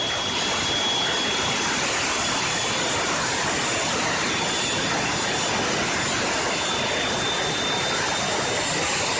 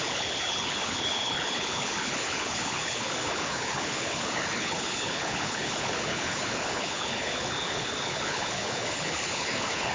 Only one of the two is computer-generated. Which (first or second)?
second